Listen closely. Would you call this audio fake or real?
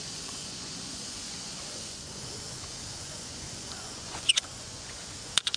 fake